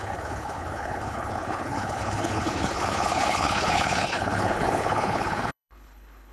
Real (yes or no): no